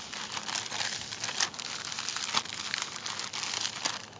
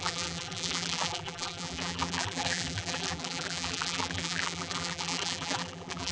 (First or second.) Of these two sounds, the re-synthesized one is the second